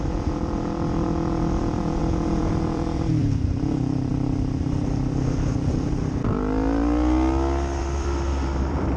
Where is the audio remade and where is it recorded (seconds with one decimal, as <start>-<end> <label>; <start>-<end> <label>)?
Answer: 0.0-4.1 remade; 4.1-7.8 recorded; 7.8-9.0 remade